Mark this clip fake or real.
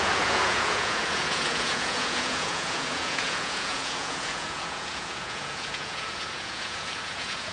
fake